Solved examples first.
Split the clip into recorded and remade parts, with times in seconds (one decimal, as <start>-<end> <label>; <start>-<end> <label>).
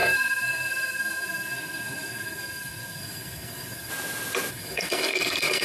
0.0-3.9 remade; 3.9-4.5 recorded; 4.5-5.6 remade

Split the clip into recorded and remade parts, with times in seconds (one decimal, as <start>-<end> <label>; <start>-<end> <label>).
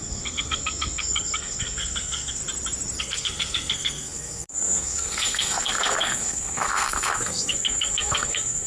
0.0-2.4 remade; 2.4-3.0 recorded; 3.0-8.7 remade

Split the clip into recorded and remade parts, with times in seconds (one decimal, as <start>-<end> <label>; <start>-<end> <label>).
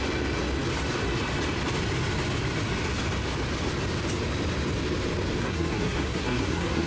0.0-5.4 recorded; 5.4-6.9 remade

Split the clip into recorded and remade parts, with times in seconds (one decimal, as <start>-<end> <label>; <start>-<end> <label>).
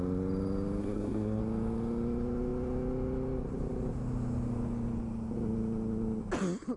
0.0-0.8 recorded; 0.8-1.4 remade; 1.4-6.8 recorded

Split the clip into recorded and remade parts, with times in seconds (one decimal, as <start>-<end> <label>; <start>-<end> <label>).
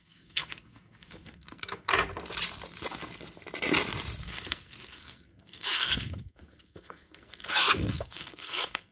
0.0-1.9 remade; 1.9-4.2 recorded; 4.2-8.9 remade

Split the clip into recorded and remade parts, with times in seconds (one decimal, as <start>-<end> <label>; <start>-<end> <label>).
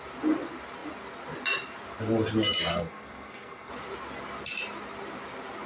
0.0-2.7 recorded; 2.7-3.7 remade; 3.7-5.7 recorded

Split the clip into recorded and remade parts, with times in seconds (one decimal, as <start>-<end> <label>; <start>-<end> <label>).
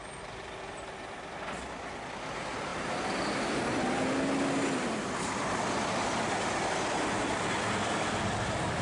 0.0-8.8 recorded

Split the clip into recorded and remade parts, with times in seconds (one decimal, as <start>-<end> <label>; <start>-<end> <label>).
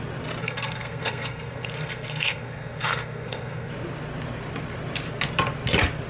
0.0-0.4 recorded; 0.4-3.7 remade; 3.7-6.1 recorded